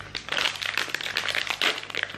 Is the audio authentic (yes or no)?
yes